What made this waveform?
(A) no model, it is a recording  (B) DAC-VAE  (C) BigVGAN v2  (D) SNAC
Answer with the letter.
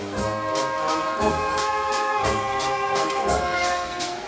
D